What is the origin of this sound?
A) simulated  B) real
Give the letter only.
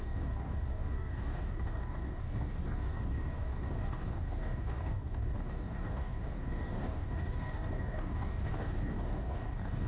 A